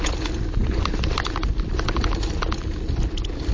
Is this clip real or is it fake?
real